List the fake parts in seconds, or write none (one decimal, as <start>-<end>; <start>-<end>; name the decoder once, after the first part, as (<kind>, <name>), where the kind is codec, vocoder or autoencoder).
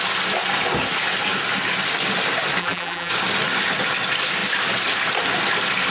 2.6-3.1 (vocoder, BigVGAN v2)